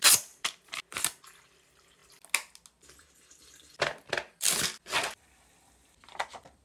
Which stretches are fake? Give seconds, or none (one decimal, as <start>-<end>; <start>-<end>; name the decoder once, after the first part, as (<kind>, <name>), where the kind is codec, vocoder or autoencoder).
0.0-2.0 (vocoder, BigVGAN v2); 3.0-6.6